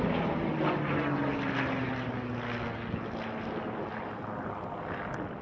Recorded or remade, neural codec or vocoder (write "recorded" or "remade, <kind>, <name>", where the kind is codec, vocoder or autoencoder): recorded